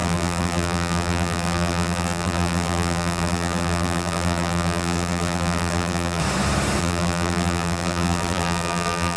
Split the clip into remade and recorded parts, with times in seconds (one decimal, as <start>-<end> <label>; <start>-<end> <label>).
0.0-6.2 remade; 6.2-6.8 recorded; 6.8-9.2 remade